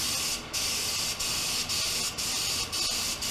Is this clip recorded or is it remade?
recorded